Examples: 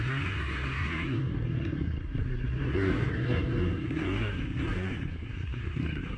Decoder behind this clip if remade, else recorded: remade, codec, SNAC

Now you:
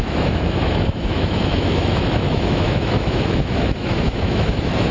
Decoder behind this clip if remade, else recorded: remade, autoencoder, DAC-VAE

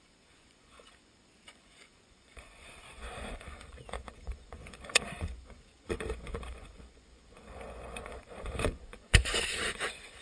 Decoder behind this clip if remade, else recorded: remade, vocoder, Vocos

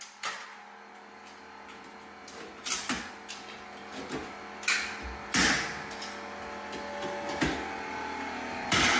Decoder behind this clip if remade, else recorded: recorded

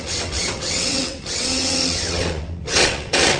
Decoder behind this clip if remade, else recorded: remade, vocoder, WaveNeXt